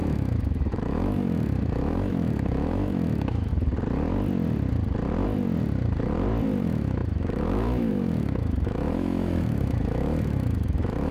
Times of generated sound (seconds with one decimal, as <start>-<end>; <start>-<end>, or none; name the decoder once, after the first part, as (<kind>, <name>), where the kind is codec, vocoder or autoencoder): 0.0-3.5 (autoencoder, DAC-VAE); 6.6-11.1